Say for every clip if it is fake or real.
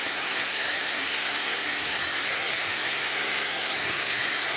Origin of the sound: fake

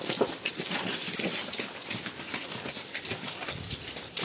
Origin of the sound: real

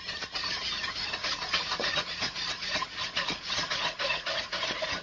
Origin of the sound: fake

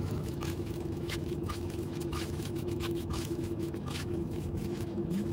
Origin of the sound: fake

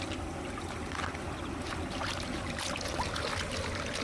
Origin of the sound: real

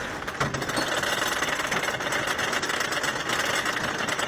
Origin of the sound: real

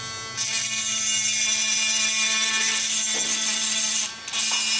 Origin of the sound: real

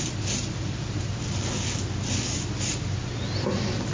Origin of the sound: real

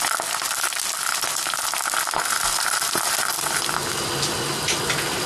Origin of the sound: real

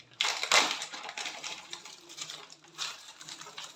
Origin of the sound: fake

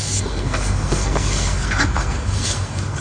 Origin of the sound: fake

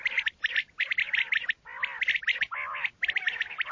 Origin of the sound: real